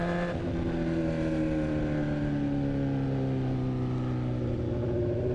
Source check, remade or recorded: recorded